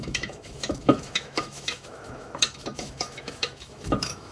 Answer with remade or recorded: remade